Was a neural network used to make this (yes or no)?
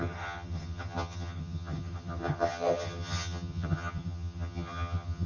yes